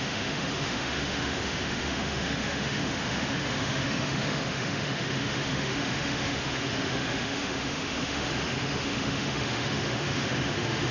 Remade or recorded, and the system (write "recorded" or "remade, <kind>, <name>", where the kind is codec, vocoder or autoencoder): remade, autoencoder, DAC-VAE